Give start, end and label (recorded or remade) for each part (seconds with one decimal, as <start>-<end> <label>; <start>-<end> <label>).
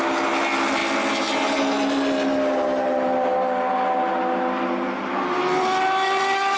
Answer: 0.0-6.6 recorded